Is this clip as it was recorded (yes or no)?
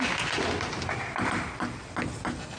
yes